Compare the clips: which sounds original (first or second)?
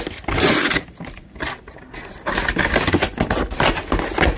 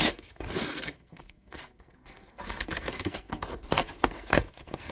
first